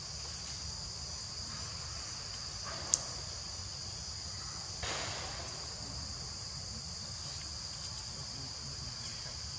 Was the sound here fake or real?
real